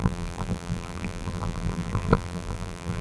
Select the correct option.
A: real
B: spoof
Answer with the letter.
B